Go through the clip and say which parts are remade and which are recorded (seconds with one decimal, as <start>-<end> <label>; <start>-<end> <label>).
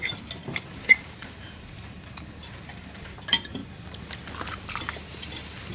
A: 0.0-0.4 recorded; 0.4-2.1 remade; 2.1-5.7 recorded